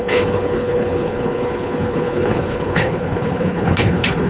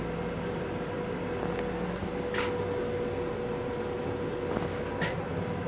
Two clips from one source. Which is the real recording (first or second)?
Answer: second